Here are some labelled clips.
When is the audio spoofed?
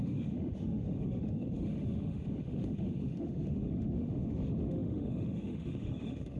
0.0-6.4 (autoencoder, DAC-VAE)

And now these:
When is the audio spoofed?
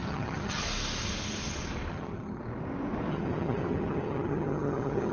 0.0-0.6 (vocoder, HiFi-GAN); 1.9-2.4; 3.1-5.1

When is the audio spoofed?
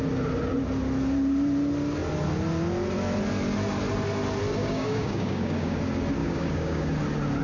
4.6-5.8 (codec, DAC); 6.2-6.8